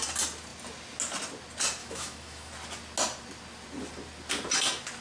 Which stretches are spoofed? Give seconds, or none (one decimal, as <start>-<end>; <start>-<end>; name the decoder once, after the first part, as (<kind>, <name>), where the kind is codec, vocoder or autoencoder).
1.8-2.5 (autoencoder, DAC-VAE)